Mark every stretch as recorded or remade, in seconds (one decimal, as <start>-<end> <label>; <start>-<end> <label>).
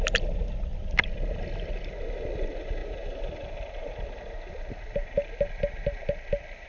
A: 0.0-6.7 recorded